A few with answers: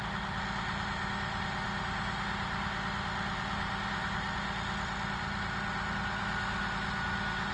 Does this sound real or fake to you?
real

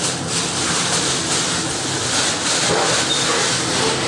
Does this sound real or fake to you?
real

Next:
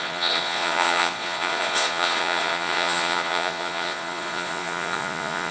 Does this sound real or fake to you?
fake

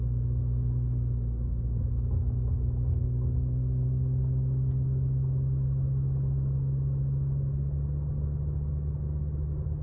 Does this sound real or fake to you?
real